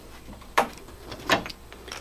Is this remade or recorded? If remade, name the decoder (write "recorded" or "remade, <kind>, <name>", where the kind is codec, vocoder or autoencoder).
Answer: remade, vocoder, BigVGAN v2